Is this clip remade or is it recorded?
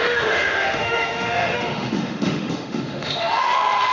remade